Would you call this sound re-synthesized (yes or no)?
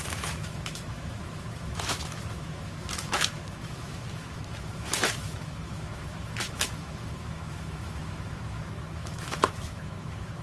yes